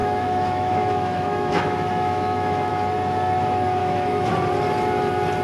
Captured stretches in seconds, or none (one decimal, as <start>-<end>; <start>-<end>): 2.7-3.8; 4.3-5.4